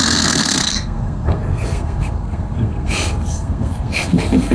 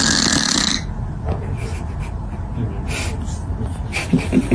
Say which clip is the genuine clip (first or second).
second